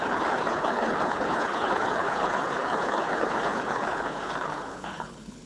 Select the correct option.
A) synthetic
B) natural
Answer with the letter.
A